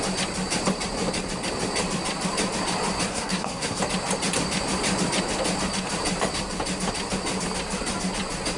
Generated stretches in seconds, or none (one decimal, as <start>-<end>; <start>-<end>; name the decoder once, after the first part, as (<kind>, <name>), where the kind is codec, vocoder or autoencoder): 3.1-3.8 (codec, SNAC)